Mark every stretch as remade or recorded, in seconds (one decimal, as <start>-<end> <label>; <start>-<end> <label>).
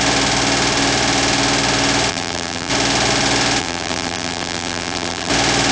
0.0-2.1 recorded; 2.1-2.7 remade; 2.7-3.6 recorded; 3.6-5.3 remade; 5.3-5.7 recorded